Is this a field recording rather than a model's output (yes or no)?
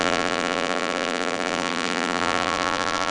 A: no